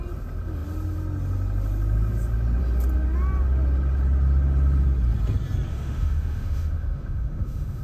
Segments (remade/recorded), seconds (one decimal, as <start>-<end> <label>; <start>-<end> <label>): 0.0-5.7 recorded; 5.7-7.8 remade